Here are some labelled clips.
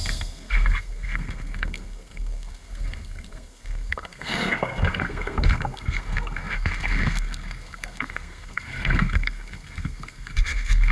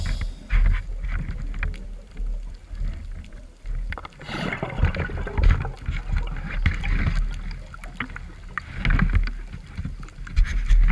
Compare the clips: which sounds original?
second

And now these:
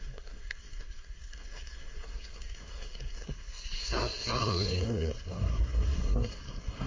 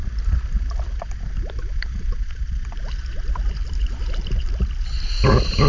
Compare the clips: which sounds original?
second